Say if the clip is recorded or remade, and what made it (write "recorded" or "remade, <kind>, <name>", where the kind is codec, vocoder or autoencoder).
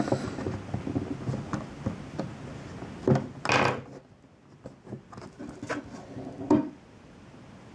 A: recorded